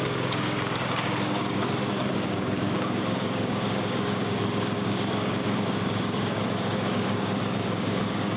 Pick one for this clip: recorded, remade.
remade